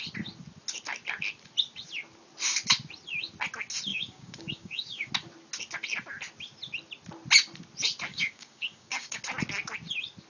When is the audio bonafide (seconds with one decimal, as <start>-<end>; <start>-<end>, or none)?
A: 0.0-3.9; 5.1-8.1; 9.2-10.3